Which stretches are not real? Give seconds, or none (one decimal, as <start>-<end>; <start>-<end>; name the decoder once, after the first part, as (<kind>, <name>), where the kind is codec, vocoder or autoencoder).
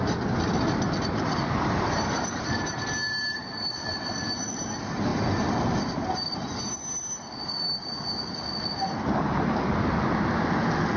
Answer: none